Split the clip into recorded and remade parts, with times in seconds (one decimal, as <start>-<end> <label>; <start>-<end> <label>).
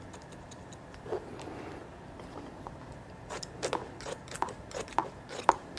0.0-5.8 recorded